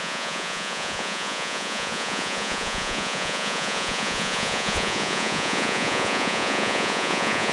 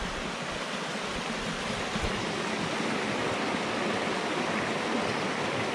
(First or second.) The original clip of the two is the second